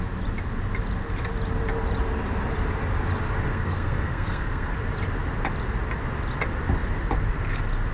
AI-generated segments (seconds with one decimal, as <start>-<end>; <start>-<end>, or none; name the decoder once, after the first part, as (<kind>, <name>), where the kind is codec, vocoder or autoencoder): 3.5-4.7 (codec, SNAC)